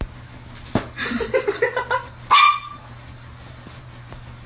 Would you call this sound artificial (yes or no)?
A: no